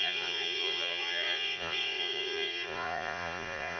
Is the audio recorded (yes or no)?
no